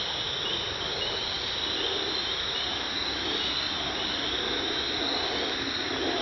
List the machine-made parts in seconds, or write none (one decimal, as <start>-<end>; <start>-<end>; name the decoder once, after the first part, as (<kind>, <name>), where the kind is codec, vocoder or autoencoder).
none